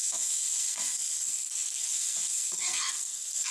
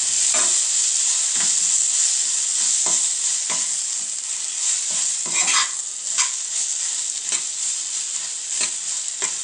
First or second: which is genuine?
second